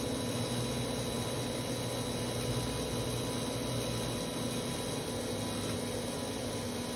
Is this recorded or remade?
recorded